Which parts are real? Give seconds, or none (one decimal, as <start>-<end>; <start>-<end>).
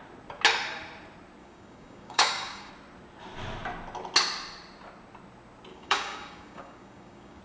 0.0-1.4; 2.7-5.7